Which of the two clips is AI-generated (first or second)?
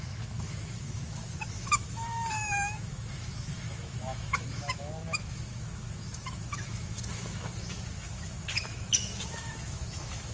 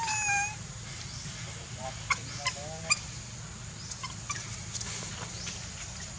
first